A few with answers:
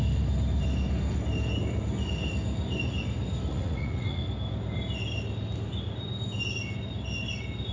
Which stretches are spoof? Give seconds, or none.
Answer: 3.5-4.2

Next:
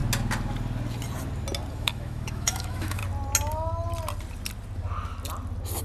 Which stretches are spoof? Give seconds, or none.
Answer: 1.7-3.0

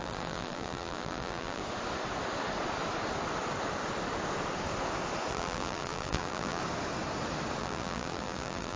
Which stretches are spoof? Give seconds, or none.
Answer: 0.0-1.6; 5.3-6.6; 7.6-8.8

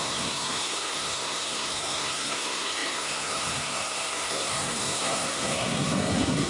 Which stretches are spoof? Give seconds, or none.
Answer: 0.0-6.5

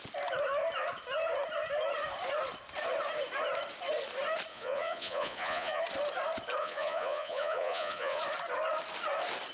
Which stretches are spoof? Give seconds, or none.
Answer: 4.5-5.8; 6.6-8.2

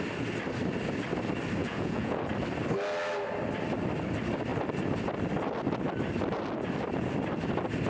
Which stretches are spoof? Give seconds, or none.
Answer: 1.6-2.2